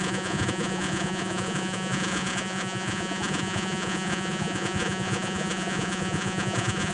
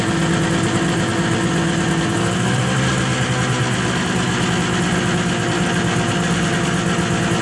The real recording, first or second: second